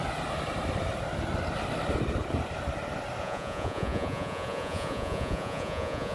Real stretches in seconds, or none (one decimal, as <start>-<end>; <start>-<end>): 0.0-3.2